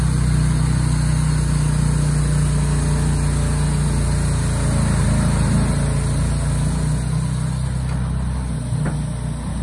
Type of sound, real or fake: real